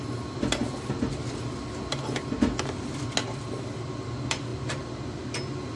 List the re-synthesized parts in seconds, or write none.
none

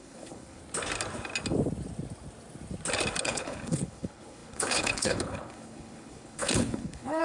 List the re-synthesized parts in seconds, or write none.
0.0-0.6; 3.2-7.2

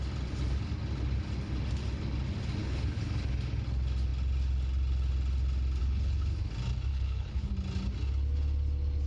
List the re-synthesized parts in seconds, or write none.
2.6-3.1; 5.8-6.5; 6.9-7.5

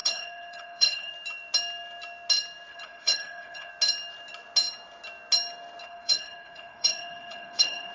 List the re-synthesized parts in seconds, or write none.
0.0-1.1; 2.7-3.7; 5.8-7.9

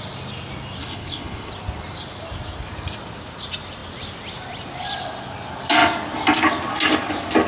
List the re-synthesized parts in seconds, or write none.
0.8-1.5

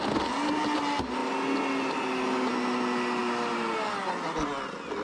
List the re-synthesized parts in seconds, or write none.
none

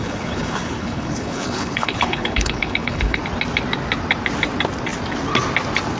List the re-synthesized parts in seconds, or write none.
0.0-3.2